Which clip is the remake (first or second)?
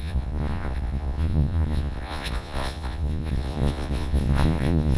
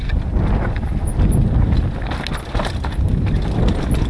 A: first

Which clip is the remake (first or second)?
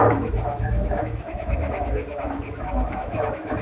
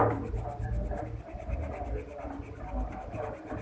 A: first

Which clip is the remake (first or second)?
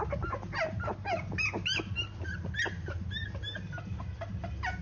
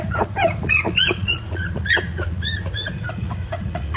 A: second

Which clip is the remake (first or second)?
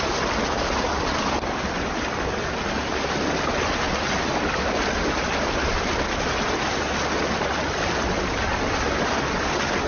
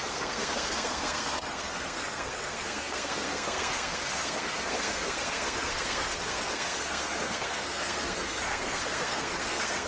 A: second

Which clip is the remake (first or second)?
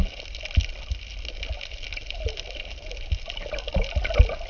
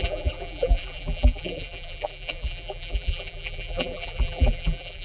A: second